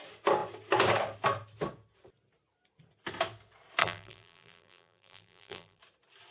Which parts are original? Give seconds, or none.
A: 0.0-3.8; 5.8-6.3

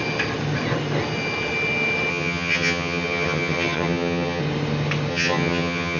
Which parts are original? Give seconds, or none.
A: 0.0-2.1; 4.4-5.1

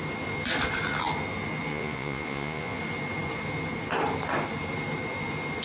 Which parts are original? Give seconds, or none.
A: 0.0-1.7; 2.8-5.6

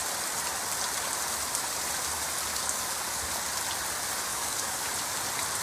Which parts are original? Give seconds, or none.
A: 0.0-2.5; 3.4-4.3; 4.9-5.6

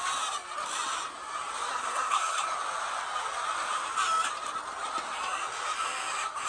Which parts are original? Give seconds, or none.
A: 0.0-1.7; 2.5-6.5

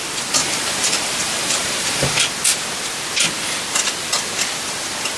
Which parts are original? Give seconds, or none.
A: 0.0-0.4; 2.2-5.2